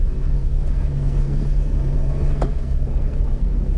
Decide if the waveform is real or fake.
fake